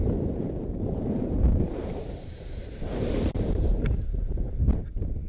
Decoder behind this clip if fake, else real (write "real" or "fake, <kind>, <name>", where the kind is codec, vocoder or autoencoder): fake, vocoder, BigVGAN v2